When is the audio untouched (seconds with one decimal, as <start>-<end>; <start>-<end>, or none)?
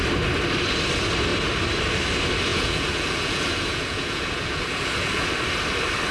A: 0.0-2.5; 5.3-6.1